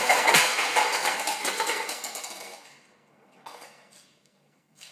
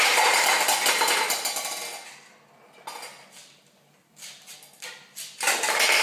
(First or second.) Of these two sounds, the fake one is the first